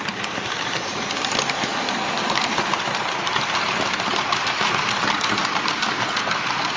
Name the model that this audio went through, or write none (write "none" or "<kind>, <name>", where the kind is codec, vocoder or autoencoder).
vocoder, BigVGAN v2